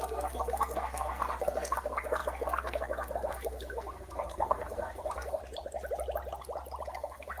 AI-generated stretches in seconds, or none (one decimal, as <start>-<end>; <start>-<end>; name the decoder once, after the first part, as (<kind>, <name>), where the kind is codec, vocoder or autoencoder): 0.0-5.4 (codec, SNAC); 6.9-7.4